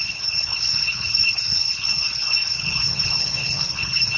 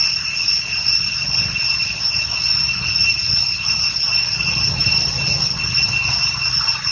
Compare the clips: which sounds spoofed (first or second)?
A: first